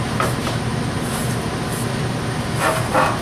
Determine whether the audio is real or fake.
real